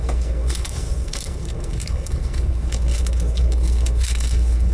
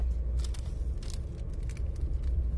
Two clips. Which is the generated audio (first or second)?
first